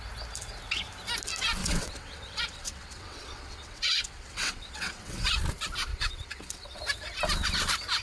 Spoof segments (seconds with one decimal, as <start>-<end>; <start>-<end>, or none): 1.6-5.4; 5.9-6.8